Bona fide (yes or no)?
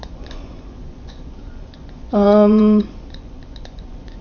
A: no